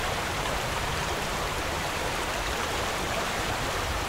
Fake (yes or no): yes